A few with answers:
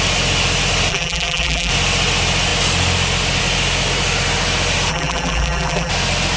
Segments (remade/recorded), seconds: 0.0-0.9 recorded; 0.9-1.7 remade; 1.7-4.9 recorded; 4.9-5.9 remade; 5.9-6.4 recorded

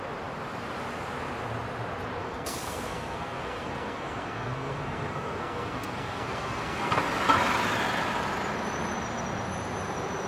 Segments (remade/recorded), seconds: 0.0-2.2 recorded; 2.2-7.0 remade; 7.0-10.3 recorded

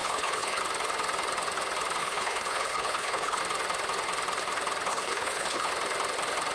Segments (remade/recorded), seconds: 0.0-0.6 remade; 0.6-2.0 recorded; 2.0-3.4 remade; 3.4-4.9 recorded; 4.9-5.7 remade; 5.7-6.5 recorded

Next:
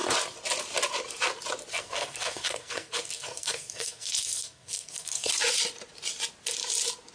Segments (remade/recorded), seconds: 0.0-1.7 recorded; 1.7-5.3 remade; 5.3-7.1 recorded

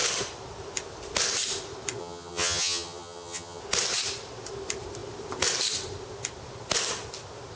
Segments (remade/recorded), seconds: 0.0-2.0 recorded; 2.0-3.6 remade; 3.6-7.6 recorded

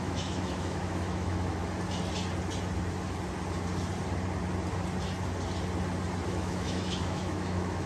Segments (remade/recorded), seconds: 0.0-1.6 remade; 1.6-6.3 recorded; 6.3-7.9 remade

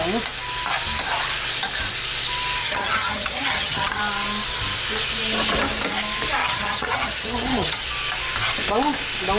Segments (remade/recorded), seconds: 0.0-2.6 recorded; 2.6-4.0 remade; 4.0-6.4 recorded; 6.4-7.8 remade; 7.8-9.4 recorded